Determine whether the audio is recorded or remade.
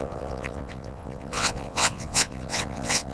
remade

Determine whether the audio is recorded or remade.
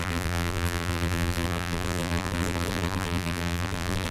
remade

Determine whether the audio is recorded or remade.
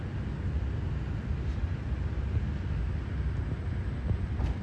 recorded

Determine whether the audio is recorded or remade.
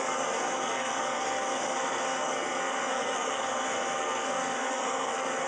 remade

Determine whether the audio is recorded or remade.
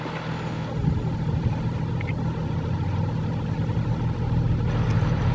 recorded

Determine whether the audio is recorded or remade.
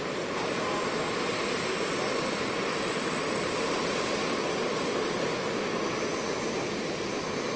recorded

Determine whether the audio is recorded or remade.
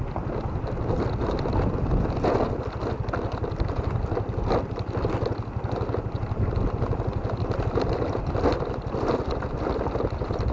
recorded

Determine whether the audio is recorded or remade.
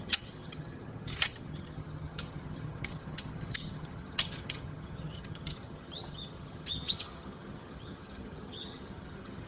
remade